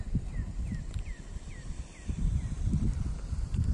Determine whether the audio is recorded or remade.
remade